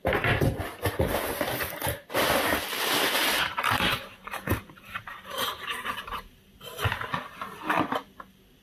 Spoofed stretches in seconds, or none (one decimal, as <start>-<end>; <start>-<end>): 3.2-6.5